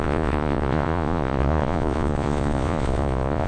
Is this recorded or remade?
remade